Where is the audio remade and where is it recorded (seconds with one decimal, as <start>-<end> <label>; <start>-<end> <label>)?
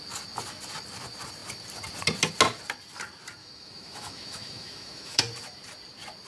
0.0-3.4 recorded; 3.4-5.2 remade; 5.2-6.3 recorded